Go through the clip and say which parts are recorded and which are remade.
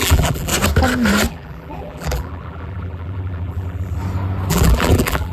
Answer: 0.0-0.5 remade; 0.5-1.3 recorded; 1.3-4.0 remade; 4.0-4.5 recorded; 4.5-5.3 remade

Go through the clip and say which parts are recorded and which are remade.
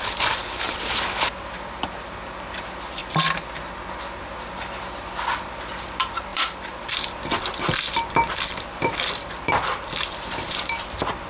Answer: 0.0-3.0 remade; 3.0-4.2 recorded; 4.2-11.3 remade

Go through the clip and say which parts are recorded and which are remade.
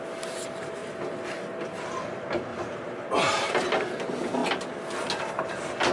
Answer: 0.0-2.5 recorded; 2.5-3.6 remade; 3.6-5.9 recorded